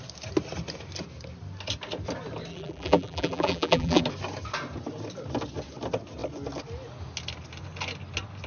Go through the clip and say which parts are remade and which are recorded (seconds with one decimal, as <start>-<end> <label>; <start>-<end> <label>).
0.0-2.5 recorded; 2.5-4.0 remade; 4.0-8.5 recorded